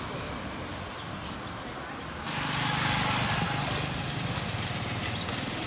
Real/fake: real